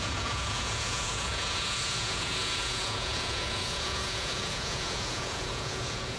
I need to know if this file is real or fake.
fake